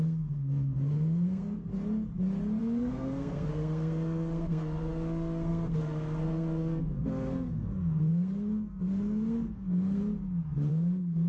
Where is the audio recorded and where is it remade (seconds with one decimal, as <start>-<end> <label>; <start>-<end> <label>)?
0.0-1.7 remade; 1.7-2.6 recorded; 2.6-10.0 remade; 10.0-10.7 recorded; 10.7-11.3 remade